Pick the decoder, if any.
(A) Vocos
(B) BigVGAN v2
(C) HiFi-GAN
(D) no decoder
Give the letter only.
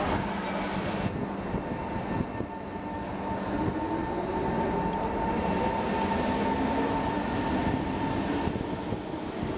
D